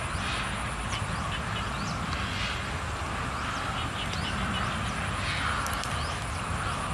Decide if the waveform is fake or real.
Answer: real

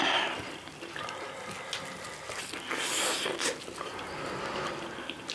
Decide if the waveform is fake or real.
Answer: real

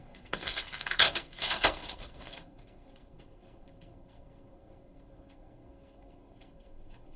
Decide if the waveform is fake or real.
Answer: fake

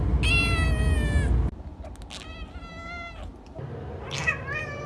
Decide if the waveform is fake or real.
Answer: real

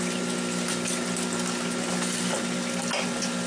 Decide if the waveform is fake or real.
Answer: real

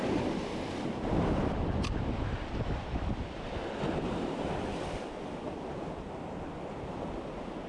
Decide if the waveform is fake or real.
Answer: real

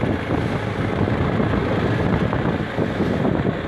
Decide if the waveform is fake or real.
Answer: real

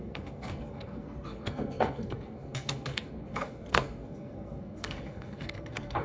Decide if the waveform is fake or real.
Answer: fake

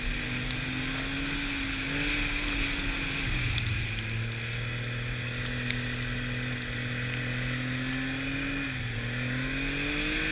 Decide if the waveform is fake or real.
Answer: real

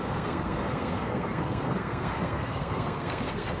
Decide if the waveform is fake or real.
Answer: fake